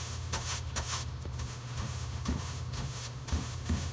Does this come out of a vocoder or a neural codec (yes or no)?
yes